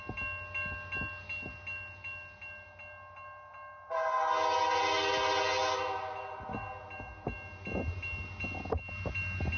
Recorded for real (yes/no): yes